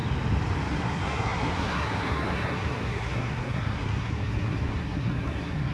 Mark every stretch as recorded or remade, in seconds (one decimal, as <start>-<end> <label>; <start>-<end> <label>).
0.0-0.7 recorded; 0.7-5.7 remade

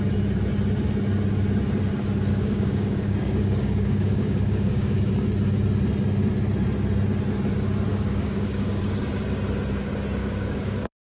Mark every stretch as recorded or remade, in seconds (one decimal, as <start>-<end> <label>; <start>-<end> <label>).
0.0-2.3 recorded; 2.3-5.1 remade; 5.1-7.9 recorded; 7.9-8.8 remade; 8.8-10.2 recorded; 10.2-11.2 remade

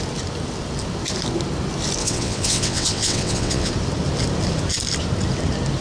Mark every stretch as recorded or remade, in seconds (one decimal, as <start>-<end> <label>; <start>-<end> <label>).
0.0-2.0 recorded; 2.0-3.7 remade; 3.7-5.8 recorded

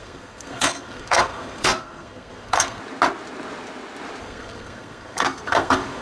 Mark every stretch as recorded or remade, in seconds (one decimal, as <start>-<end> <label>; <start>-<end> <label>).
0.0-2.8 remade; 2.8-4.2 recorded; 4.2-6.0 remade